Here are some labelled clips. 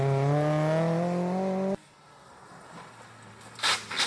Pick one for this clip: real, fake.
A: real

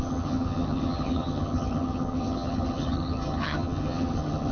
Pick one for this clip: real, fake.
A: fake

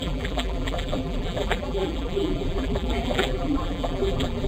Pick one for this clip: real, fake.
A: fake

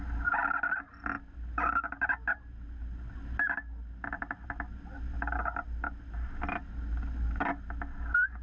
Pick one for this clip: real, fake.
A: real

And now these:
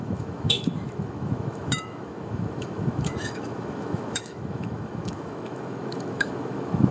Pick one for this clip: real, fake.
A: fake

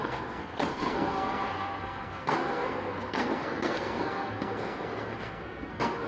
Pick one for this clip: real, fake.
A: fake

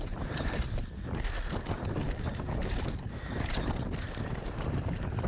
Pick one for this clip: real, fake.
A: real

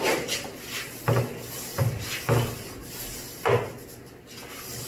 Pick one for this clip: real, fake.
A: real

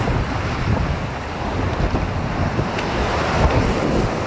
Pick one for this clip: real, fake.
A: real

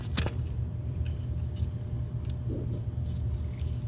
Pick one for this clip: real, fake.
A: real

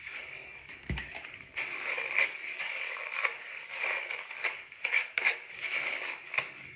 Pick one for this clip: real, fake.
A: fake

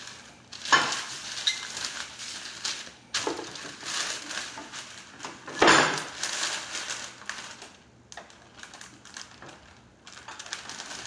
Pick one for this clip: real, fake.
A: real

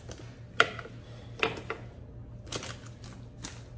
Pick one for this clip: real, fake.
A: real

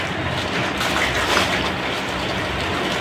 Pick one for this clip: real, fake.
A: real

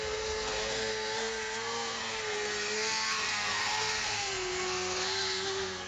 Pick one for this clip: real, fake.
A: fake